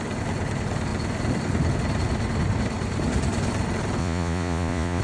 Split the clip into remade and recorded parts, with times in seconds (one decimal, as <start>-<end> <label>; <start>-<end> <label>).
0.0-4.0 recorded; 4.0-5.0 remade